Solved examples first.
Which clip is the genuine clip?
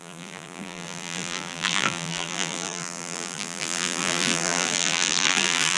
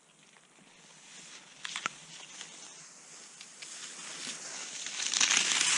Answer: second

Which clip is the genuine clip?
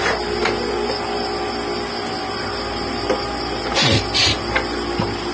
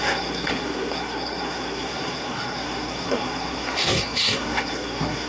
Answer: first